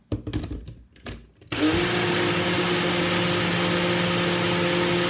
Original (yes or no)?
yes